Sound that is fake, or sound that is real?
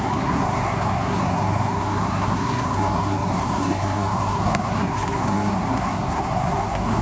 fake